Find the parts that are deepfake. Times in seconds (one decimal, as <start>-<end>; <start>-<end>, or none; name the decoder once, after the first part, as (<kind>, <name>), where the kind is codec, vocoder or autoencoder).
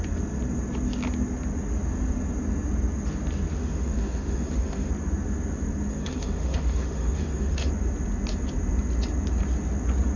3.5-4.9 (autoencoder, DAC-VAE); 5.9-7.7